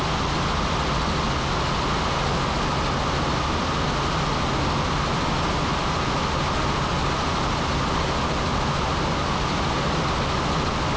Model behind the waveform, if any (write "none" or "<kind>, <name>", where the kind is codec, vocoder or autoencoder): none